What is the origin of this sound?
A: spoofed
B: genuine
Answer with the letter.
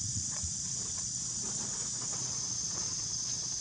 A